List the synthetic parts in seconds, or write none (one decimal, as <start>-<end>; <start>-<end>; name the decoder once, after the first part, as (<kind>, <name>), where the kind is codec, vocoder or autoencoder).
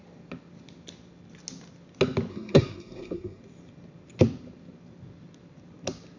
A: 2.3-3.4 (codec, SNAC)